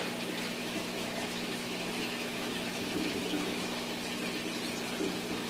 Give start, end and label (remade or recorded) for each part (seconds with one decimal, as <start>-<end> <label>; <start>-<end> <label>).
0.0-0.6 recorded; 0.6-3.9 remade; 3.9-5.5 recorded